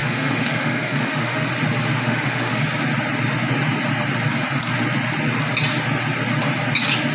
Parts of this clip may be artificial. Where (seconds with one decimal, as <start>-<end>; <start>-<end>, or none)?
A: 0.0-1.5; 1.9-2.6